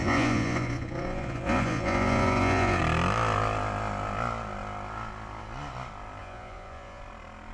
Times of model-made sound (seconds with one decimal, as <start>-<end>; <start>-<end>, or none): 0.0-2.8; 6.2-7.0